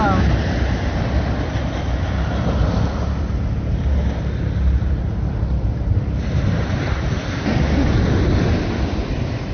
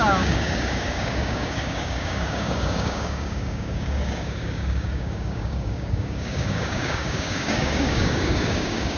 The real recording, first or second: first